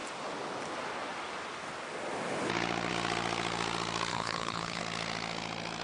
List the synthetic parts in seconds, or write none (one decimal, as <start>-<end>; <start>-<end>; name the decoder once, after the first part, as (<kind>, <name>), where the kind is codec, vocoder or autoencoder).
4.1-4.8 (codec, HILCodec)